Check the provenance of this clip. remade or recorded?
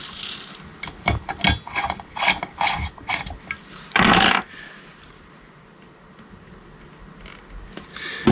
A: recorded